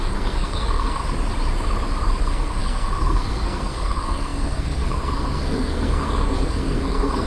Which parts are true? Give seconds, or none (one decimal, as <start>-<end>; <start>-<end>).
1.0-2.2